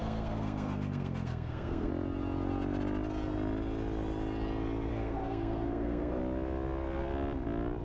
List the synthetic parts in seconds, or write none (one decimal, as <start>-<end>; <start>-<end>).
0.0-1.9; 4.9-6.2